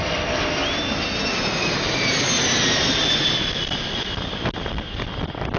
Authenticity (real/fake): real